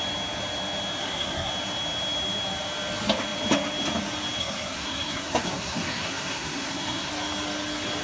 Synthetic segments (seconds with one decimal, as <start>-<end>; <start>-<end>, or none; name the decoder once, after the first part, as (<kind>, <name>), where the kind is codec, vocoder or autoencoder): 1.0-1.5 (codec, SNAC); 4.4-7.1